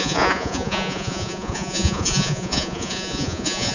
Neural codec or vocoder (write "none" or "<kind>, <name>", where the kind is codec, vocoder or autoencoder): vocoder, Vocos